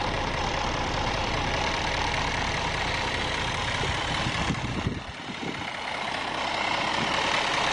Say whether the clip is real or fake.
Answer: fake